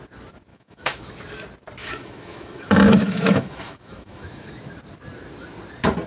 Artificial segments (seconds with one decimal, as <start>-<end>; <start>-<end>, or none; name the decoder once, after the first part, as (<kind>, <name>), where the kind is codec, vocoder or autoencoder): 0.5-1.1 (autoencoder, DAC-VAE); 1.8-4.5